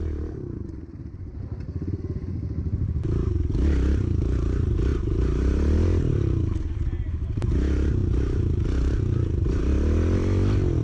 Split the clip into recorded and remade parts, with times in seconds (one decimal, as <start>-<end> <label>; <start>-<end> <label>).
0.0-4.9 recorded; 4.9-6.1 remade; 6.1-10.8 recorded